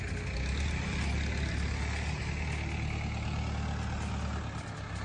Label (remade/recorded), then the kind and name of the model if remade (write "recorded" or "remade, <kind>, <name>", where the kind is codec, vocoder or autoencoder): recorded